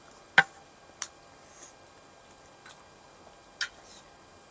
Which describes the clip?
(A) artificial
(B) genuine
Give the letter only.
B